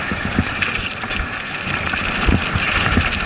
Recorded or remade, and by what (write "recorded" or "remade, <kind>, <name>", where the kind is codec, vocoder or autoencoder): recorded